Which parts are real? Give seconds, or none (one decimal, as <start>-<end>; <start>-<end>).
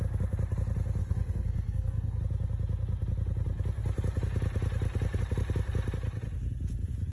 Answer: 0.0-1.0; 2.2-7.1